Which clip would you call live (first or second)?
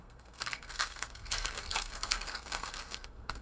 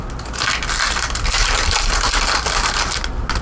second